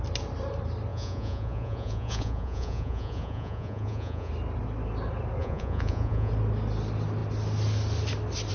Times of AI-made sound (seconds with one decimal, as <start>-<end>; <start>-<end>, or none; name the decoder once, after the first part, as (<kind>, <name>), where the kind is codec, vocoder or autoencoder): 0.9-4.3 (vocoder, Vocos); 5.4-6.3

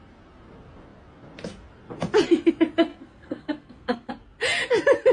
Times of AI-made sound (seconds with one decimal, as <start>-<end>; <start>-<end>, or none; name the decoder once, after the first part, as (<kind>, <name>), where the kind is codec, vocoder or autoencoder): 2.9-4.1 (codec, SNAC)

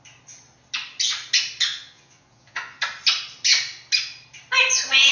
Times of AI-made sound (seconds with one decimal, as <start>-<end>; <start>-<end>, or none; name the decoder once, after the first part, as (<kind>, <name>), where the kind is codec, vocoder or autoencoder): 1.7-2.8 (vocoder, Vocos)

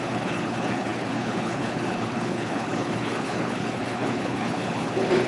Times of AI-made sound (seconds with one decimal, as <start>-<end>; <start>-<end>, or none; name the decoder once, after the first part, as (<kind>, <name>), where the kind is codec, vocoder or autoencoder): 0.0-5.3 (codec, HILCodec)

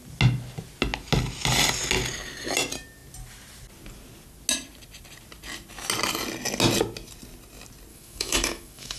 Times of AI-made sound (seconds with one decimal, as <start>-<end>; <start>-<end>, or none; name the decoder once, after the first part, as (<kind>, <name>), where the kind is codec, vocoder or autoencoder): 7.9-9.0 (autoencoder, DAC-VAE)

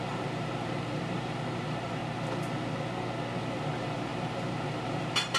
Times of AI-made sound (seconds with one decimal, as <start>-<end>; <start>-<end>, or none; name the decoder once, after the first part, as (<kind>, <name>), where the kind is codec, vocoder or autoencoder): 0.0-2.0 (vocoder, BigVGAN v2); 3.4-5.4

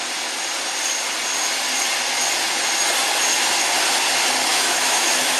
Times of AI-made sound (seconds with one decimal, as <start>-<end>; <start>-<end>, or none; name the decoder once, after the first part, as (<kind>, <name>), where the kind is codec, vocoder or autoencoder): 4.5-5.4 (autoencoder, DAC-VAE)